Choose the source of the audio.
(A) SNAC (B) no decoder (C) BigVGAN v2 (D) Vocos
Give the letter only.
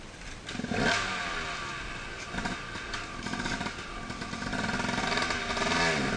B